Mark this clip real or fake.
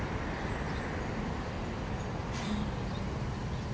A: real